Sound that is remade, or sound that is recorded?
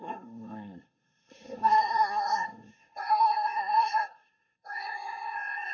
remade